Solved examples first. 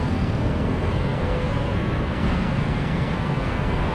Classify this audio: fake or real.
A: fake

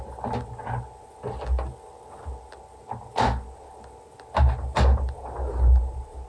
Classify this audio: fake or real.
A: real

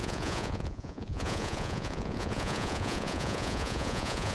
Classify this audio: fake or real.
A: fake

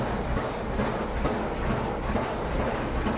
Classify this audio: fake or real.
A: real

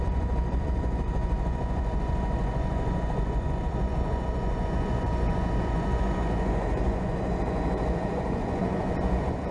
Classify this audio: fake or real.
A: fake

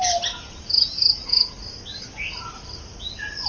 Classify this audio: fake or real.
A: real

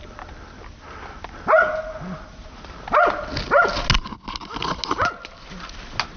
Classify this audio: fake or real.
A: real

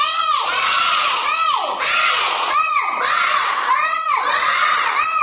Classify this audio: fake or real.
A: fake